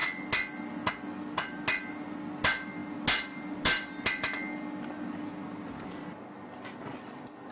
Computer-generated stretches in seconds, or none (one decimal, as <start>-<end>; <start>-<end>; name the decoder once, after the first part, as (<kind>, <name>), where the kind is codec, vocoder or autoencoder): none